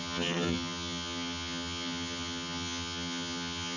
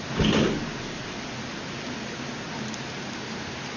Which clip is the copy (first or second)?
first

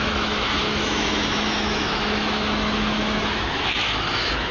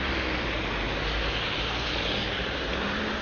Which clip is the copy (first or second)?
first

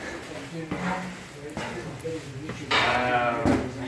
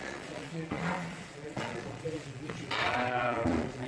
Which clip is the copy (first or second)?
second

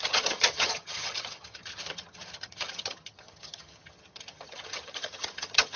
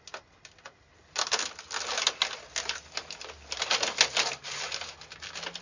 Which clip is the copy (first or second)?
first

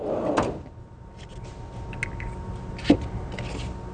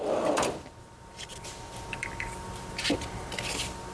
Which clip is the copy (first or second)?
second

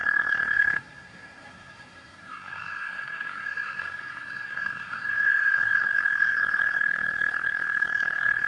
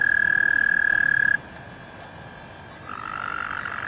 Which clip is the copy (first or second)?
first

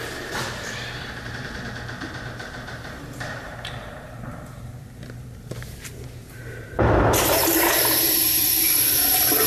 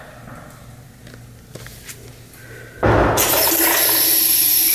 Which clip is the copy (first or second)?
first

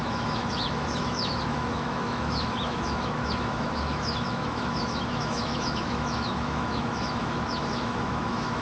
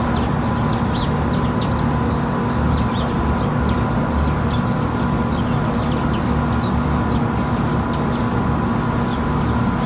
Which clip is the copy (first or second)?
first